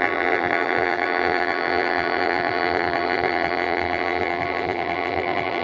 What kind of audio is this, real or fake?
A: fake